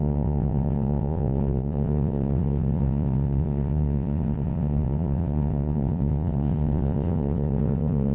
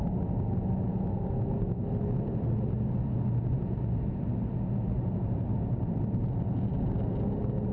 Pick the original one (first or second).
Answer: second